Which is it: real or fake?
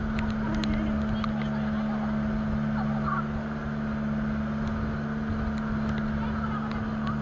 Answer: real